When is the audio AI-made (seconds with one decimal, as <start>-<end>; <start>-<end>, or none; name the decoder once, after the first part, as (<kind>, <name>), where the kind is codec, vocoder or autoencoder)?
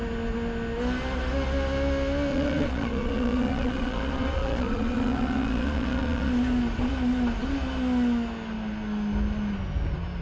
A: 2.3-6.3 (vocoder, Vocos)